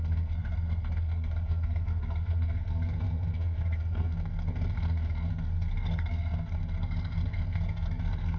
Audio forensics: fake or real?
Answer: fake